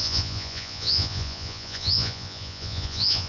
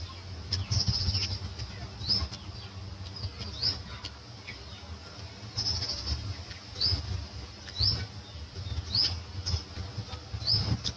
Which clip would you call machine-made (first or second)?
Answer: first